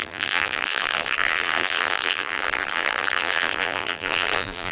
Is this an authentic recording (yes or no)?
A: no